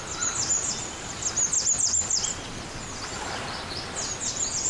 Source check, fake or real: real